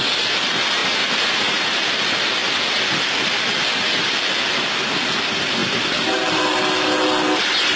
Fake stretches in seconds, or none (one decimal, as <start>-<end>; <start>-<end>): 0.8-1.8; 5.6-6.6